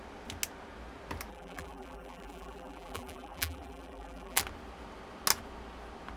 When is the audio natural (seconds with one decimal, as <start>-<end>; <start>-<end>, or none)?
0.0-1.3; 4.4-6.2